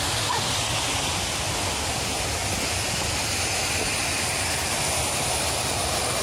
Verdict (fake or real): real